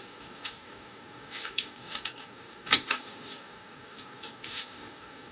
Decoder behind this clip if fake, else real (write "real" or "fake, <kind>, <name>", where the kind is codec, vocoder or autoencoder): fake, codec, DAC